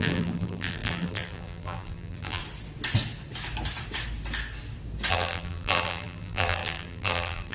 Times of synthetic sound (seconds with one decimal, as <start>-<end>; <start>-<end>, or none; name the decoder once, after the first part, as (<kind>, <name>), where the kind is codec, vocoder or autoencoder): 0.0-2.4 (vocoder, BigVGAN v2); 5.1-7.5